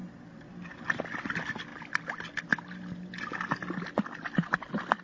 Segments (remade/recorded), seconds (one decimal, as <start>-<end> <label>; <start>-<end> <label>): 0.0-0.5 remade; 0.5-5.0 recorded